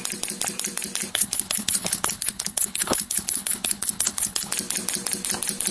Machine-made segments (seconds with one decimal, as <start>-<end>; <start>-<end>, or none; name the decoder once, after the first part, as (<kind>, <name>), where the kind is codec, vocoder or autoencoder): 1.1-4.5 (codec, HILCodec)